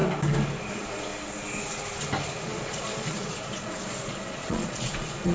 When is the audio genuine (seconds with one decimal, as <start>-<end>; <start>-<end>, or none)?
0.0-0.7; 1.1-2.3